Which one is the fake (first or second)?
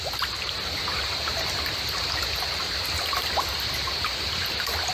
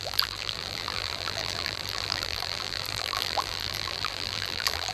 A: second